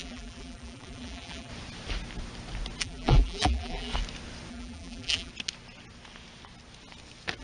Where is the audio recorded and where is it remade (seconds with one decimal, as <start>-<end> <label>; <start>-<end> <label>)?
0.0-1.5 remade; 1.5-2.8 recorded; 2.8-3.9 remade; 3.9-4.5 recorded; 4.5-5.3 remade; 5.3-7.4 recorded